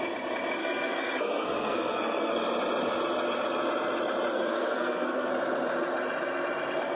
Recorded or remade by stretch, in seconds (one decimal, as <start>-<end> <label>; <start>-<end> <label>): 0.0-0.6 recorded; 0.6-2.3 remade; 2.3-4.3 recorded; 4.3-5.3 remade; 5.3-7.0 recorded